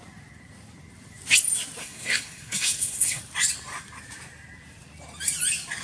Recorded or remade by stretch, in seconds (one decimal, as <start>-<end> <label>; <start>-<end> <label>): 0.0-1.8 recorded; 1.8-3.2 remade; 3.2-5.8 recorded